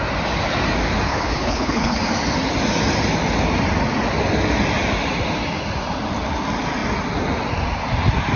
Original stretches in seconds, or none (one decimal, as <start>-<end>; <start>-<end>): 0.0-1.1; 2.0-8.4